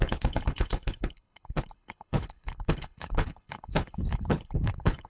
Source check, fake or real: fake